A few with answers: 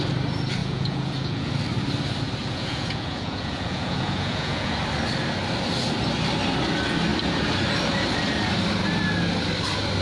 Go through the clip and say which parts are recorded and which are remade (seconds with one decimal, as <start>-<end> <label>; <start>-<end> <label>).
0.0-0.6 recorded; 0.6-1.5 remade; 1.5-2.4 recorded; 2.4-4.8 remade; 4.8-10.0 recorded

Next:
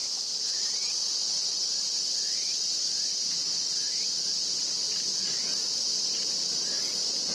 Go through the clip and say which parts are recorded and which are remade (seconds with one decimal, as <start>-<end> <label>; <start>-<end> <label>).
0.0-7.3 recorded

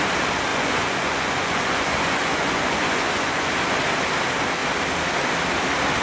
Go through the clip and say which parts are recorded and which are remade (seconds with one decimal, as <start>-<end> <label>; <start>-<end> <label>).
0.0-0.5 recorded; 0.5-3.5 remade; 3.5-6.0 recorded

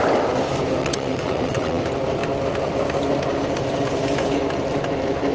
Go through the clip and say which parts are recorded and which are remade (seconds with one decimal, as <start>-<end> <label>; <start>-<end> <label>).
0.0-0.8 recorded; 0.8-1.8 remade; 1.8-5.3 recorded

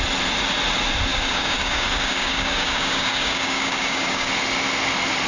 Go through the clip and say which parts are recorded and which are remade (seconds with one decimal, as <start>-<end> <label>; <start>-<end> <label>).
0.0-1.1 recorded; 1.1-4.3 remade; 4.3-5.3 recorded

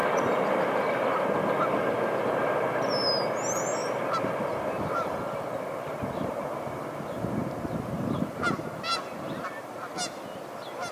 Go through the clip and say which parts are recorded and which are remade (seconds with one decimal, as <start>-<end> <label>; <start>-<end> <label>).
0.0-10.9 recorded

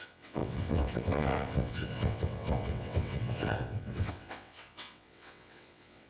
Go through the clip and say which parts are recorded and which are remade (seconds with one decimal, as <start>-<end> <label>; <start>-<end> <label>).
0.0-6.1 remade

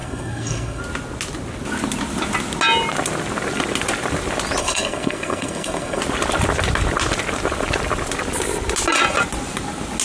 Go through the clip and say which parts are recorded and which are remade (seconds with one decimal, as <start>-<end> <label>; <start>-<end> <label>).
0.0-0.8 remade; 0.8-4.6 recorded; 4.6-6.0 remade; 6.0-10.0 recorded